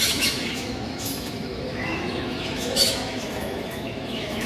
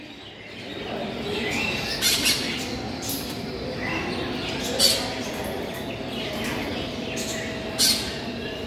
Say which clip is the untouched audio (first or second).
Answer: second